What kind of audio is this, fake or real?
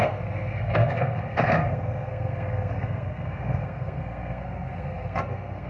fake